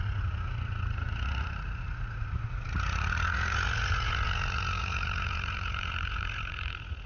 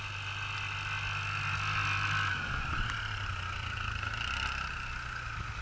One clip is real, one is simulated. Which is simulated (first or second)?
first